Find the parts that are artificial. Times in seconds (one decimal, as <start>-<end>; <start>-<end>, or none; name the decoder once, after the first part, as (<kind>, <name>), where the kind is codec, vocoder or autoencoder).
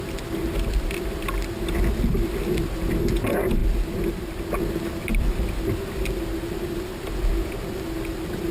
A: none